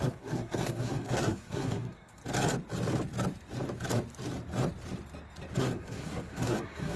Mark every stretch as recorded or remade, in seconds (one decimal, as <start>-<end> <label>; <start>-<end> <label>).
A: 0.0-2.2 remade; 2.2-5.6 recorded; 5.6-7.0 remade